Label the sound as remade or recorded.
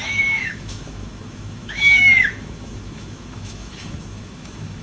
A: remade